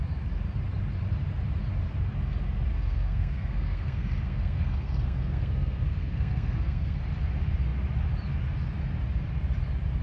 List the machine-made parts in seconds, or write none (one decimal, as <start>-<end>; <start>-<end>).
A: 2.7-7.0